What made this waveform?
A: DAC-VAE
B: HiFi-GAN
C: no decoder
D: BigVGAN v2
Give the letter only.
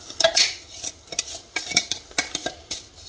C